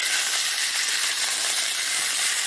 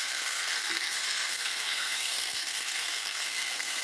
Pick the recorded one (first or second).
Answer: first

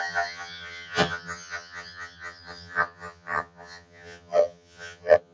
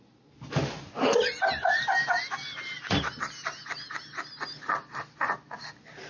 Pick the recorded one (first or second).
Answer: second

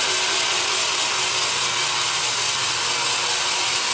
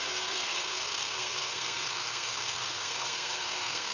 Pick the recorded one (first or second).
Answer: first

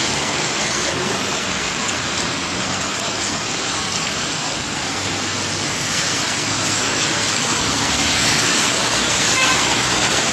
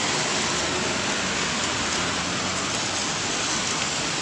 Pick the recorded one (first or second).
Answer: second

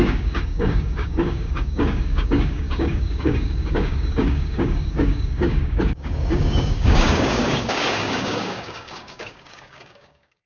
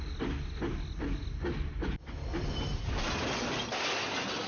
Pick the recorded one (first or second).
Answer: second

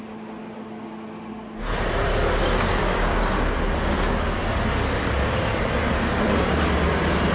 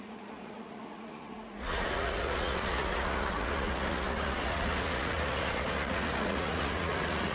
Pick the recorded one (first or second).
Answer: first